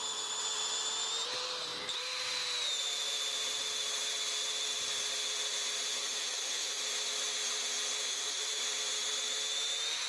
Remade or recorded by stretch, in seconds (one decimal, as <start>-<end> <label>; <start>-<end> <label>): 0.0-6.0 recorded; 6.0-6.8 remade; 6.8-8.1 recorded; 8.1-8.6 remade; 8.6-10.1 recorded